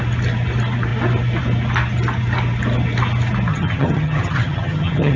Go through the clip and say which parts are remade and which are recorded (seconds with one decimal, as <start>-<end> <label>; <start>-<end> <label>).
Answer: 0.0-3.5 recorded; 3.5-5.2 remade

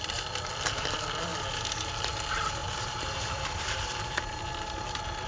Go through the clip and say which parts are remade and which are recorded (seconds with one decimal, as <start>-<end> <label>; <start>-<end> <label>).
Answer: 0.0-2.6 recorded; 2.6-4.4 remade; 4.4-5.3 recorded

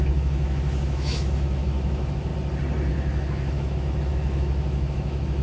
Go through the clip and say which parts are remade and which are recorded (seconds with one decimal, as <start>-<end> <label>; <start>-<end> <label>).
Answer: 0.0-2.3 remade; 2.3-2.9 recorded; 2.9-5.4 remade

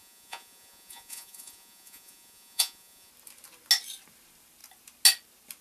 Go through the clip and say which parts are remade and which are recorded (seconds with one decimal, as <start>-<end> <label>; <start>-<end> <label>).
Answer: 0.0-3.1 remade; 3.1-5.6 recorded

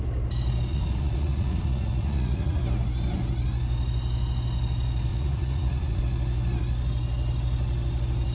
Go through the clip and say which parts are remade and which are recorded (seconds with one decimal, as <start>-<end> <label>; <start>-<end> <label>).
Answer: 0.0-0.7 recorded; 0.7-2.6 remade; 2.6-5.1 recorded; 5.1-6.0 remade; 6.0-8.3 recorded

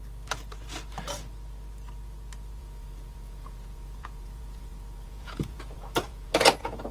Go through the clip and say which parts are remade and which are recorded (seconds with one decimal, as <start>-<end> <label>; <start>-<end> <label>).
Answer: 0.0-2.6 recorded; 2.6-6.9 remade

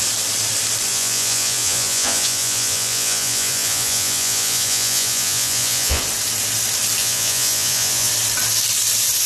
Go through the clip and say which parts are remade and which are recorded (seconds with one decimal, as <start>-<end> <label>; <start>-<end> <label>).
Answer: 0.0-0.9 recorded; 0.9-6.0 remade; 6.0-7.0 recorded; 7.0-8.1 remade; 8.1-9.3 recorded

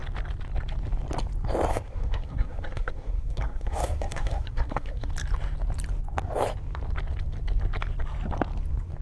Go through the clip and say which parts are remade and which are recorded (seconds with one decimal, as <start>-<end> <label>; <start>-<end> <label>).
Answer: 0.0-1.7 recorded; 1.7-5.1 remade; 5.1-9.0 recorded